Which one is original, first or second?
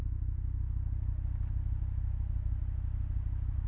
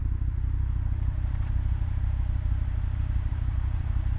first